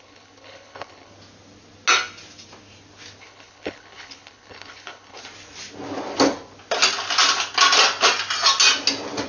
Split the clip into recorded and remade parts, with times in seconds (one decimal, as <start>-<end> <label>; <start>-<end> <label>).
0.0-1.1 remade; 1.1-3.2 recorded; 3.2-5.2 remade; 5.2-9.3 recorded